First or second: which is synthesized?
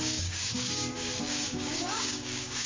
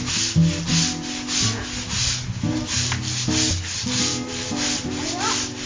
first